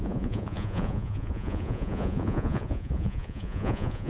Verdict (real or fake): fake